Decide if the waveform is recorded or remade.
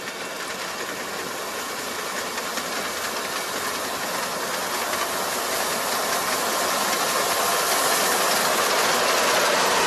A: recorded